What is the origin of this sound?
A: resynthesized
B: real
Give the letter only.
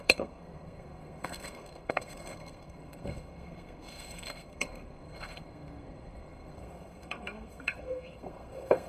A